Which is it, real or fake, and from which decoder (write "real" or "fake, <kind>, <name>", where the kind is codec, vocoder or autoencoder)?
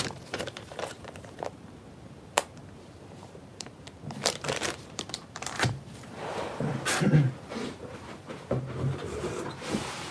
fake, vocoder, BigVGAN v2